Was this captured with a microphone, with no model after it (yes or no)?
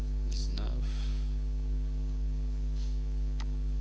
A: no